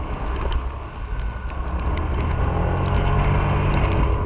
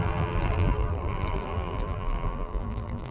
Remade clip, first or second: second